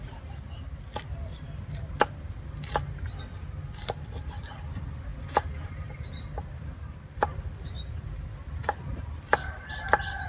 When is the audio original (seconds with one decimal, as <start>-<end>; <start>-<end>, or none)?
0.0-10.3